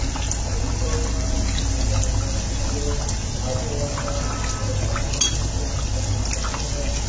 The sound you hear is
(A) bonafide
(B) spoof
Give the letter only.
A